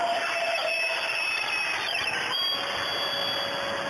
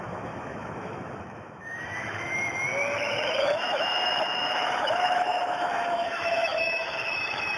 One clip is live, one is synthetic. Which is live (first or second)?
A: first